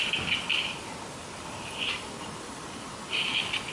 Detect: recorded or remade recorded